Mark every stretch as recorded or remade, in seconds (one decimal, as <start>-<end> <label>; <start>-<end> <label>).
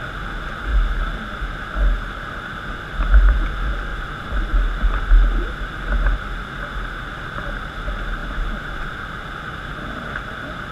0.0-10.7 recorded